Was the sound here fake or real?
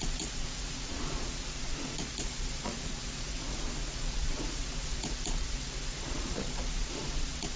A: fake